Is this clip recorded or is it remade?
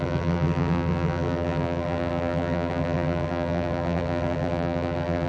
remade